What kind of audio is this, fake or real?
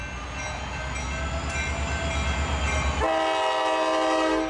real